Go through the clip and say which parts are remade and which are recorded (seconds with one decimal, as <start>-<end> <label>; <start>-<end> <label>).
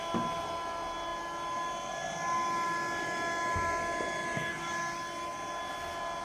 0.0-6.2 recorded